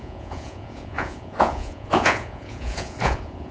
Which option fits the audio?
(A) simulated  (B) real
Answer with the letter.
A